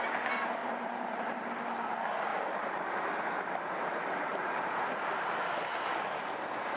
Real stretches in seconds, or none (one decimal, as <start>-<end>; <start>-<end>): 0.0-0.6; 1.5-2.3; 2.9-4.3; 5.2-6.8